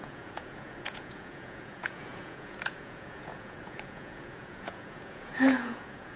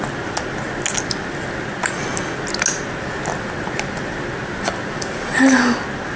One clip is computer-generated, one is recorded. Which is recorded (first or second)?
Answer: second